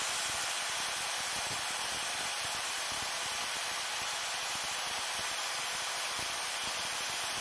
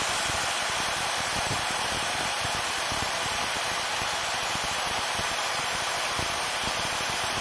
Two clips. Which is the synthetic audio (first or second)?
second